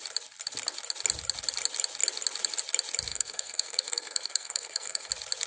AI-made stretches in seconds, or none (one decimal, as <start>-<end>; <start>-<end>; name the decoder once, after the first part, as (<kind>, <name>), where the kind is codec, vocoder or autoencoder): 3.1-5.1 (codec, SNAC)